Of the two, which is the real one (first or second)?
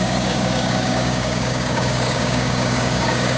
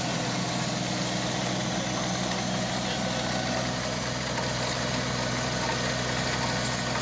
second